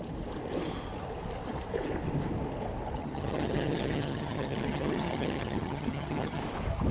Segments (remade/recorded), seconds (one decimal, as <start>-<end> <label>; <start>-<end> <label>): 0.0-3.0 recorded; 3.0-6.4 remade; 6.4-6.9 recorded